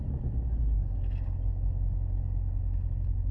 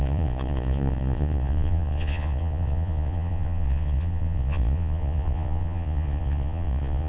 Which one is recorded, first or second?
first